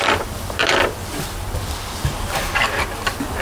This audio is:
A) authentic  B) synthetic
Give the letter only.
B